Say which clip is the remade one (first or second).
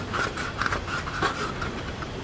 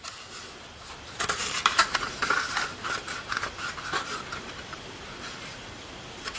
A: second